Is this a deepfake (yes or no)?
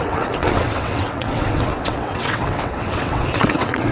yes